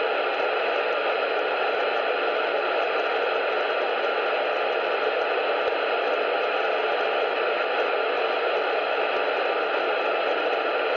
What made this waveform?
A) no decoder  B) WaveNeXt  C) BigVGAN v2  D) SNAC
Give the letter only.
A